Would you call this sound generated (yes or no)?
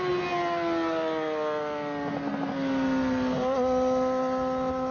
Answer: no